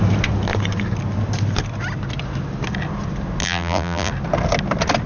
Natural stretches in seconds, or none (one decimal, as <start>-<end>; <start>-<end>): 0.0-3.4; 4.1-5.1